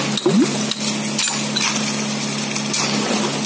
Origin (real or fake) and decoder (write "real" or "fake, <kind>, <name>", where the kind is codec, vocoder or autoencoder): real